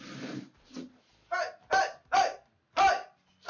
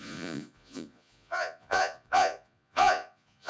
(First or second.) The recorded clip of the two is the first